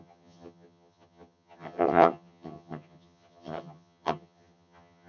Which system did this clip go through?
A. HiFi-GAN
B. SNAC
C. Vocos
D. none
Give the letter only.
A